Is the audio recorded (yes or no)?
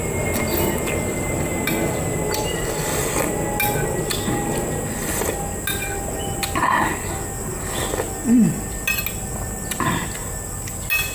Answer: yes